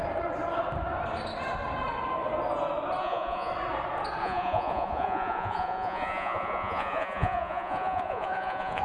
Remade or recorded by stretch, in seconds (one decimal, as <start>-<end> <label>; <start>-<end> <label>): 0.0-3.0 recorded; 3.0-3.5 remade; 3.5-4.2 recorded; 4.2-8.8 remade